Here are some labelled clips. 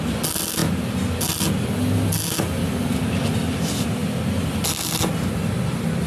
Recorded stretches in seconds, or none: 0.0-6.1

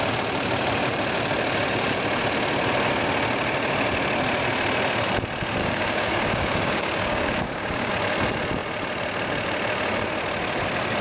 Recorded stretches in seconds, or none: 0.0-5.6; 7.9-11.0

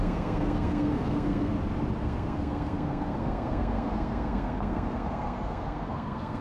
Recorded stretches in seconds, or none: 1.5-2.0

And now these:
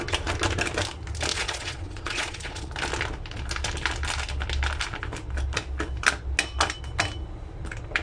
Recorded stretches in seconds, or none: 0.0-1.3; 2.7-8.0